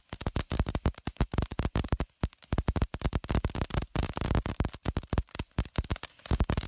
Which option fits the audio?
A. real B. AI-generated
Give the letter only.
A